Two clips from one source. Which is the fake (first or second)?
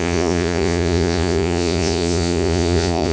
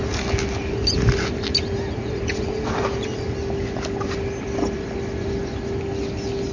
first